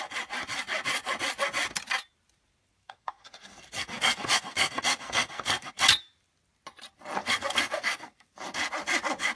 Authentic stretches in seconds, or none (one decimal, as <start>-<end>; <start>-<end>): 0.0-2.8; 5.7-7.2; 8.3-9.4